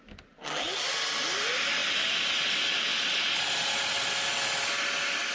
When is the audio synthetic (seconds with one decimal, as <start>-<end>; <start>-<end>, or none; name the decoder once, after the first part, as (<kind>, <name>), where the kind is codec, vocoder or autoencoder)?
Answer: none